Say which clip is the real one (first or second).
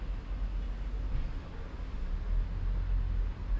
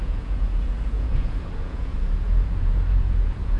first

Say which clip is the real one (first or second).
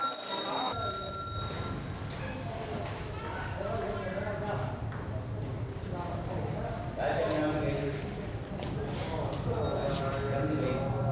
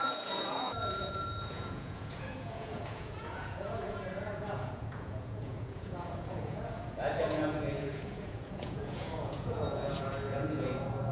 first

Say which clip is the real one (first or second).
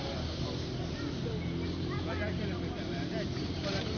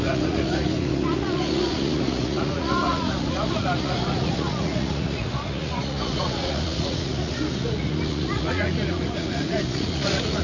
first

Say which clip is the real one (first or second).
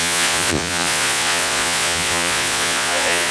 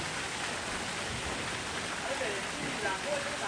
second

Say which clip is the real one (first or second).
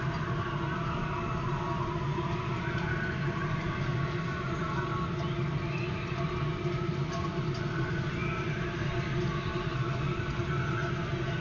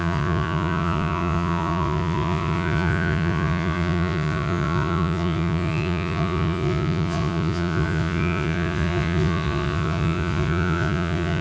first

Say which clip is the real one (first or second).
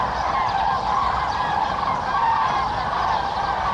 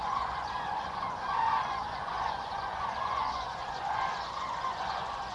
first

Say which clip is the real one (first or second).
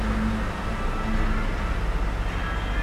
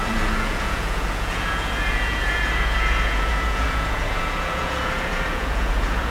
first